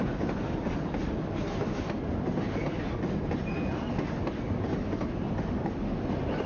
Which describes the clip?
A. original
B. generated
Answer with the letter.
A